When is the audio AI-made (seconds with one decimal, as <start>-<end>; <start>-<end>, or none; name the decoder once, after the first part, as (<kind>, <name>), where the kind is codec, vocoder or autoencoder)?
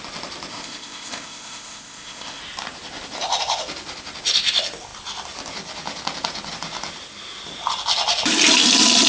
0.5-2.4 (codec, ZipCodec)